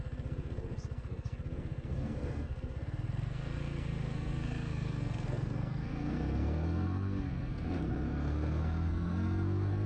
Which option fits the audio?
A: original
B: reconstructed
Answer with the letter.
B